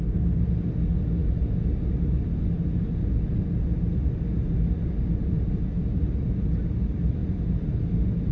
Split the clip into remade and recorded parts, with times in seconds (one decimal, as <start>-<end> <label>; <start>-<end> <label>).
0.0-8.3 recorded